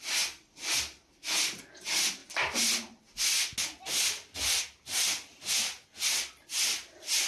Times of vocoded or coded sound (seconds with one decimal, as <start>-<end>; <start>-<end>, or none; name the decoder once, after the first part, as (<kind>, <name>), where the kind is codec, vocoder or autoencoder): none